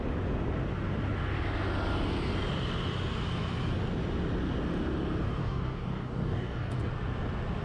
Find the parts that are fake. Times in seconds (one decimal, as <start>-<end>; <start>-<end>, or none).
5.4-6.9